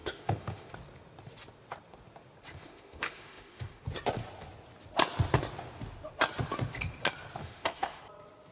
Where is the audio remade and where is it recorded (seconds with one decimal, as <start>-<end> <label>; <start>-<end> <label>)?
0.0-0.7 remade; 0.7-2.5 recorded; 2.5-3.8 remade; 3.8-7.4 recorded; 7.4-8.0 remade; 8.0-8.5 recorded